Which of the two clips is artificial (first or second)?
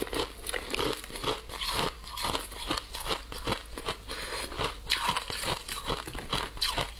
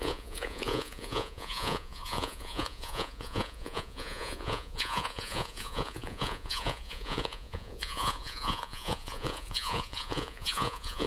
second